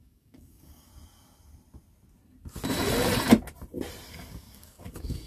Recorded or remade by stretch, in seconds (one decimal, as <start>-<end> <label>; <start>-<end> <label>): 0.0-0.9 remade; 0.9-4.1 recorded; 4.1-5.3 remade